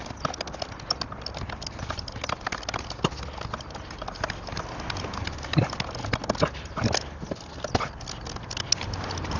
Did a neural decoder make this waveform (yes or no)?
no